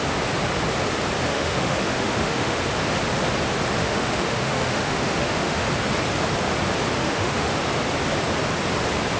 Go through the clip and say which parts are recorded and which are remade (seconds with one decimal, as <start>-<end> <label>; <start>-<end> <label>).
0.0-1.3 recorded; 1.3-2.6 remade; 2.6-3.8 recorded; 3.8-5.7 remade; 5.7-7.0 recorded; 7.0-7.5 remade; 7.5-9.2 recorded

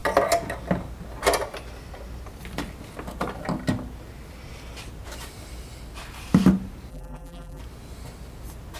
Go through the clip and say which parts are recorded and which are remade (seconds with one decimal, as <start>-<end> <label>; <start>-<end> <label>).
0.0-6.9 recorded; 6.9-7.6 remade; 7.6-8.8 recorded

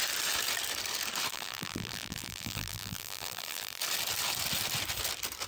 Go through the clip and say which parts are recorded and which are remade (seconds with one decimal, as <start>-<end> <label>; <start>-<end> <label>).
0.0-1.3 recorded; 1.3-3.8 remade; 3.8-5.5 recorded

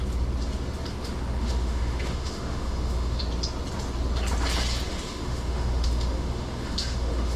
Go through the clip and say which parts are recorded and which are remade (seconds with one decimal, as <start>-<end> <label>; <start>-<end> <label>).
0.0-0.9 recorded; 0.9-3.2 remade; 3.2-4.9 recorded; 4.9-7.4 remade

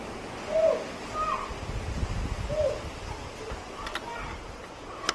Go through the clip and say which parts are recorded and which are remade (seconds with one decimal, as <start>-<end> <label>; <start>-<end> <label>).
0.0-5.1 recorded